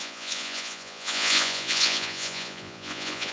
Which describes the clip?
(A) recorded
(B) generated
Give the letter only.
B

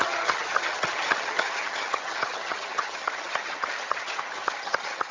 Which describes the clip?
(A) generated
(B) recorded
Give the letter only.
A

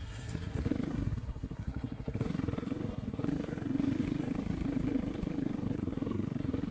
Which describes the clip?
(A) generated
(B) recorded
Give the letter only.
A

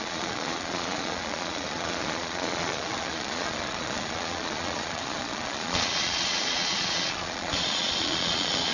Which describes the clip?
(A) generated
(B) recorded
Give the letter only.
A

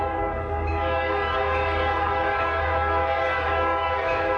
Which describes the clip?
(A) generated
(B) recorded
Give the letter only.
A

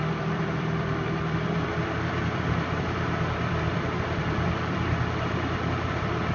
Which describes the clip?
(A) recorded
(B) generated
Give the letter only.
B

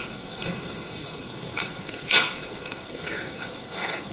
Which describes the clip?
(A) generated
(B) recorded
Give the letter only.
A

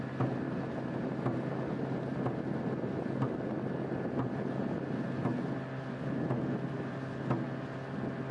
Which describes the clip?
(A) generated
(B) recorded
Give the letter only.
B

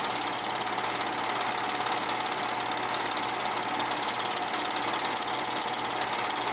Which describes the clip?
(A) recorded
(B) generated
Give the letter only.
A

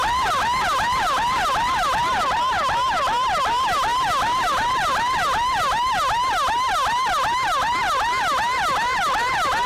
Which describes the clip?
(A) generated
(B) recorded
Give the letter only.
B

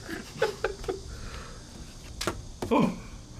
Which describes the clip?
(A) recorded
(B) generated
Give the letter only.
A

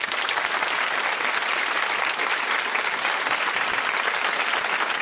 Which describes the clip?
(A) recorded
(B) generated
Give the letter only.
A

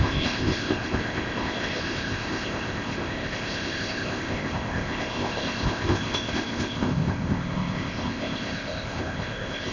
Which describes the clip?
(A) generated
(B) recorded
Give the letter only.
A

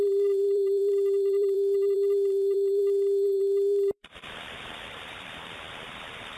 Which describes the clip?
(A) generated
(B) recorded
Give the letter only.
A